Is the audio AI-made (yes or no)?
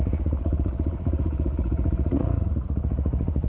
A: yes